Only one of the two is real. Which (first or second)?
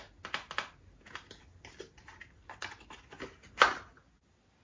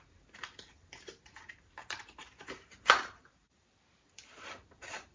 first